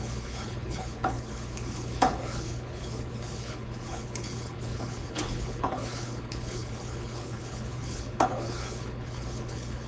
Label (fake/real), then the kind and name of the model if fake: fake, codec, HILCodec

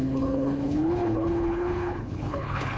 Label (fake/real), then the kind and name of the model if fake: fake, codec, HILCodec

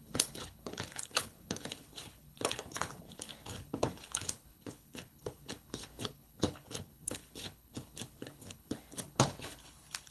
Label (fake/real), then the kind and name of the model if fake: fake, codec, HILCodec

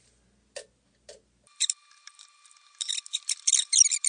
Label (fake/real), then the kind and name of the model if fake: real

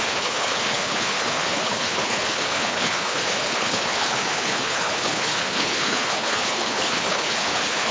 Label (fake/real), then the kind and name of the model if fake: fake, codec, HILCodec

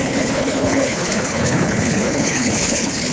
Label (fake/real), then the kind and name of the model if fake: fake, codec, HILCodec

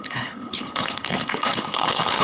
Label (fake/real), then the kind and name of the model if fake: fake, codec, HILCodec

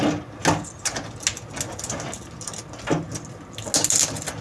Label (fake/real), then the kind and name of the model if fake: real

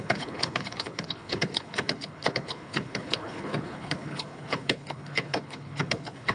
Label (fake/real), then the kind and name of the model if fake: fake, codec, HILCodec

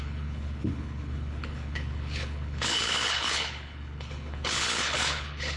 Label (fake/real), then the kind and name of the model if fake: fake, codec, HILCodec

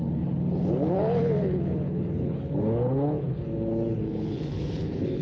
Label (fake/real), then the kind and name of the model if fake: fake, codec, HILCodec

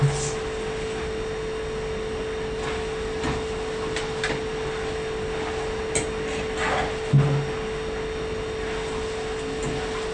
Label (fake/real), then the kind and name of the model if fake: real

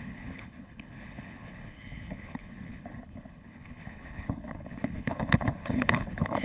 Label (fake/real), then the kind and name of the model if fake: fake, codec, HILCodec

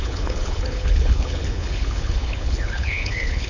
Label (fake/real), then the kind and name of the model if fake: fake, codec, HILCodec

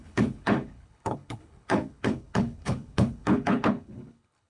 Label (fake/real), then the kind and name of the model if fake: fake, codec, HILCodec